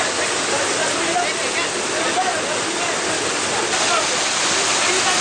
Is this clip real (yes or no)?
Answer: yes